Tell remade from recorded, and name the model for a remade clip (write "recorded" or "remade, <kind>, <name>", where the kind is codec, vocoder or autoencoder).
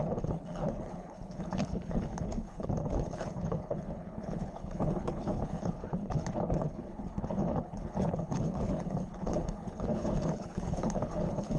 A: remade, codec, HILCodec